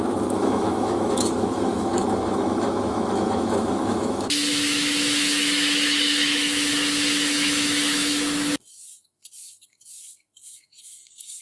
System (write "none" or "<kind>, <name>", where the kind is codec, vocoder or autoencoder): autoencoder, DAC-VAE